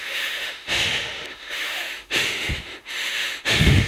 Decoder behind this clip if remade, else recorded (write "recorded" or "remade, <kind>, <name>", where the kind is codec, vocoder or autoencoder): remade, autoencoder, DAC-VAE